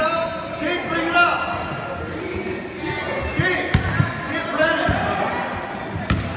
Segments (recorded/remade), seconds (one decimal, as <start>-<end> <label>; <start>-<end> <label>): 0.0-6.4 recorded